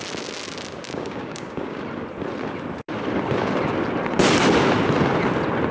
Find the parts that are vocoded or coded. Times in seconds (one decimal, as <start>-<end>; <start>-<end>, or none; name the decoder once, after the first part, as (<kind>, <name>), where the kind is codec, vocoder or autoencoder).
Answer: 0.9-1.8 (codec, DAC)